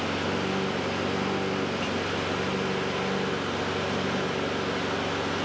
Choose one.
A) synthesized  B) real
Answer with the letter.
B